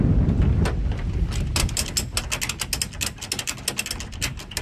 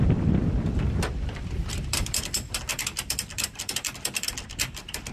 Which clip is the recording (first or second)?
first